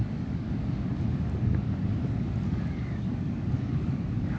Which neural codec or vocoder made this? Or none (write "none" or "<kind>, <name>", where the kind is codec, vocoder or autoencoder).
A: codec, DAC